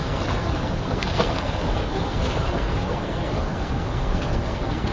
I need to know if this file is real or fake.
fake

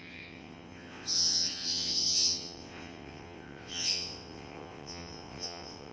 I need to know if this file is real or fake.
fake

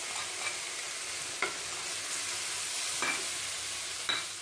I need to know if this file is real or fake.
real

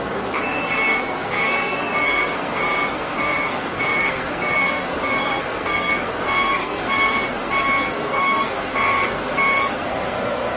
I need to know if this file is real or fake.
fake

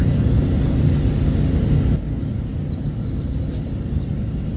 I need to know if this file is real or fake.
real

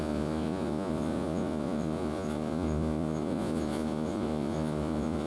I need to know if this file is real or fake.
fake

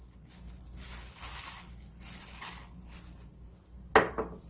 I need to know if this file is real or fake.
real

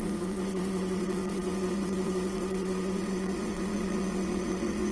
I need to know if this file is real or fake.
fake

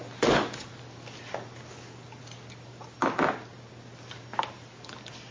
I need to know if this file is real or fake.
real